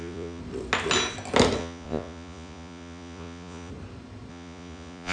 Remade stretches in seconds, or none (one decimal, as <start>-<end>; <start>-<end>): 0.0-0.4; 1.6-3.7; 4.3-5.1